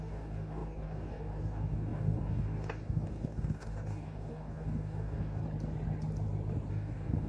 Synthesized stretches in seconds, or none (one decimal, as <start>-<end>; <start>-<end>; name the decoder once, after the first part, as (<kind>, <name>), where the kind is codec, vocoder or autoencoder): 0.0-5.4 (codec, DAC); 6.7-7.3